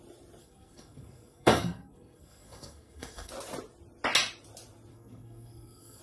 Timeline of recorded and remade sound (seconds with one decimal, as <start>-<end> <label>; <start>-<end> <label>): 0.0-0.4 recorded; 0.4-3.3 remade; 3.3-4.9 recorded; 4.9-6.0 remade

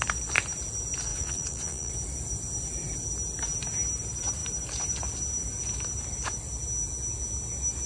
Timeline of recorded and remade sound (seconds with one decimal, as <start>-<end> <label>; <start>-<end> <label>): 0.0-1.1 recorded; 1.1-1.9 remade; 1.9-7.9 recorded